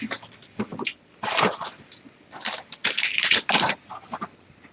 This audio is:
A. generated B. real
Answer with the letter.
B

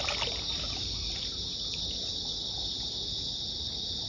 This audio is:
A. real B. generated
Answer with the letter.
A